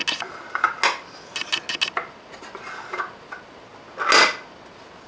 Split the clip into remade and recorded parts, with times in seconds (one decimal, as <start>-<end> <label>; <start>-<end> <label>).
0.0-5.1 recorded